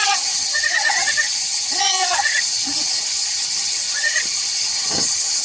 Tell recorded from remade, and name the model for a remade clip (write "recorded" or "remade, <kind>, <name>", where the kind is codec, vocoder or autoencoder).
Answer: remade, vocoder, HiFi-GAN